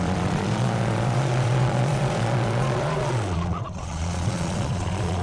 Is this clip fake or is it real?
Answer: fake